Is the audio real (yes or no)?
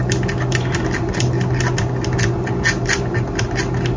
yes